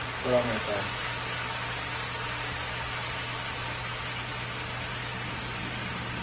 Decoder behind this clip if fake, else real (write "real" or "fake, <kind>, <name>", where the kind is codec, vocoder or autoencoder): real